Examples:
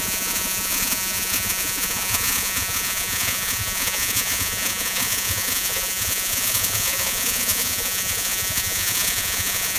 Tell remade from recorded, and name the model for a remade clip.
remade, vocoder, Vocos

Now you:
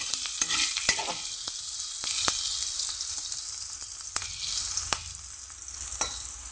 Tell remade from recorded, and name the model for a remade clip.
recorded